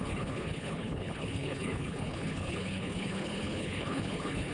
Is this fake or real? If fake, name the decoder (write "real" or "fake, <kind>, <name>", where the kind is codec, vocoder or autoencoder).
fake, codec, HILCodec